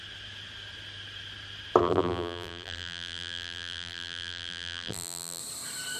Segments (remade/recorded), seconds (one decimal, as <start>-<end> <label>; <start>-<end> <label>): 0.0-1.8 recorded; 1.8-5.4 remade; 5.4-6.0 recorded